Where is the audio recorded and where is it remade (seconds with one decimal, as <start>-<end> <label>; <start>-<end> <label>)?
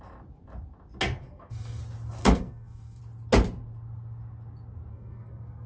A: 0.0-1.2 recorded; 1.2-1.8 remade; 1.8-2.2 recorded; 2.2-3.0 remade; 3.0-4.9 recorded; 4.9-5.7 remade